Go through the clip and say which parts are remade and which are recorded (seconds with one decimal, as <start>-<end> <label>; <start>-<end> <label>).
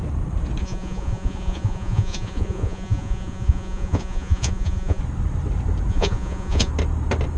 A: 0.0-0.6 recorded; 0.6-5.0 remade; 5.0-5.9 recorded; 5.9-6.7 remade; 6.7-7.4 recorded